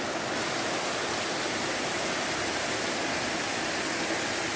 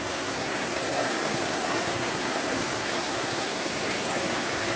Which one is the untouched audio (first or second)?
first